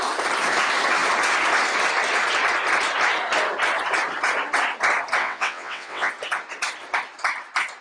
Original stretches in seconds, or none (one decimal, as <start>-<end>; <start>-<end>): 0.0-5.2; 6.1-7.8